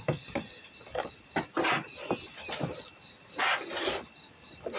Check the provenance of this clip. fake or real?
real